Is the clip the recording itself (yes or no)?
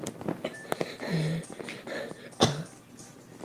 yes